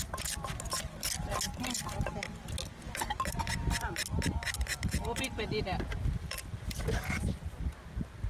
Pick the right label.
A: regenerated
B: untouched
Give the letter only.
B